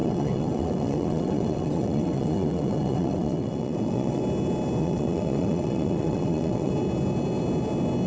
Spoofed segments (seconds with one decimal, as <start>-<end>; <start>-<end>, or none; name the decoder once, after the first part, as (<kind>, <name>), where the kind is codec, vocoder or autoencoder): 0.0-4.2 (vocoder, WaveNeXt); 4.8-6.7